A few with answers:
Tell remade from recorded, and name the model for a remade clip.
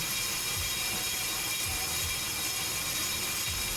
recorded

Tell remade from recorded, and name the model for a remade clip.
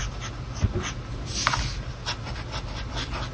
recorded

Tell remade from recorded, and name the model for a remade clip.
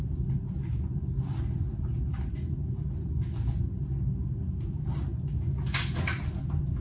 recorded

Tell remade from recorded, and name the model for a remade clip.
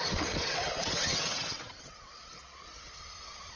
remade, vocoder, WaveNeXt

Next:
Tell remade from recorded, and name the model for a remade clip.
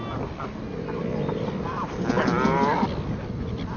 recorded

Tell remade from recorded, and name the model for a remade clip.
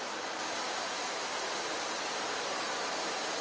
recorded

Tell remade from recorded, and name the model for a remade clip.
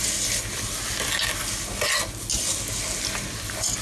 recorded